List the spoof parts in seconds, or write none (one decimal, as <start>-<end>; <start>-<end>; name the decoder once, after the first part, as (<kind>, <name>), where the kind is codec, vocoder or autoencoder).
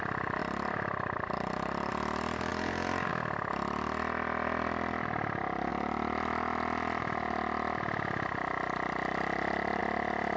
0.4-1.9 (vocoder, BigVGAN v2); 2.5-3.1